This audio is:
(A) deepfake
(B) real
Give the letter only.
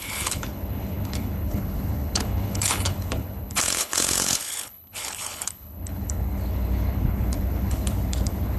A